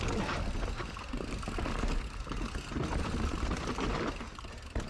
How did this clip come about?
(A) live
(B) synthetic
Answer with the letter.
A